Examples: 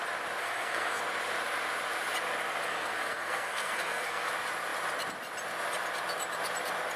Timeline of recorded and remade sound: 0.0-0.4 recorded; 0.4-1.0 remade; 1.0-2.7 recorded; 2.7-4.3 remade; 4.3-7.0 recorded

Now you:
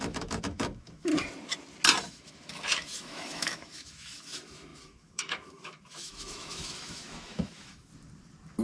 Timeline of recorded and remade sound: 0.0-1.1 remade; 1.1-2.1 recorded; 2.1-7.9 remade; 7.9-8.6 recorded

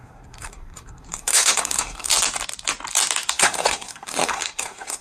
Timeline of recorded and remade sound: 0.0-2.1 remade; 2.1-3.3 recorded; 3.3-5.0 remade

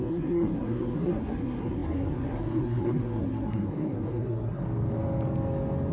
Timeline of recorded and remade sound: 0.0-4.6 remade; 4.6-5.9 recorded